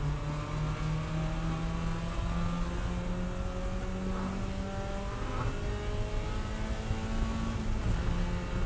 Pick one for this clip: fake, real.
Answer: real